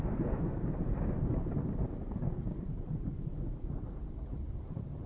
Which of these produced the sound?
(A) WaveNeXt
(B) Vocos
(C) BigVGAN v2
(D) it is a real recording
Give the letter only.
D